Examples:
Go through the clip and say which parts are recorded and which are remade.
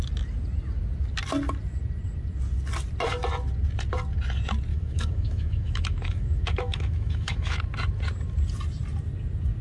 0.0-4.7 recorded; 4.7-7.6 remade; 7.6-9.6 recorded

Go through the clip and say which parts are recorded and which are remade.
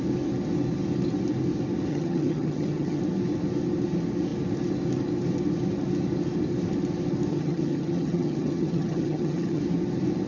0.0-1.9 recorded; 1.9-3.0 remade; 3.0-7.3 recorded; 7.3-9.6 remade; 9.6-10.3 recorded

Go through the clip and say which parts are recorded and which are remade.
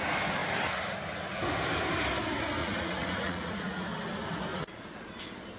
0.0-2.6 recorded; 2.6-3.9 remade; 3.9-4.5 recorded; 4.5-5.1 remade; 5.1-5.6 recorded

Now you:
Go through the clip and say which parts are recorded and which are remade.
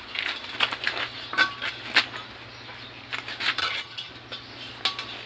0.0-3.6 recorded; 3.6-4.1 remade; 4.1-5.3 recorded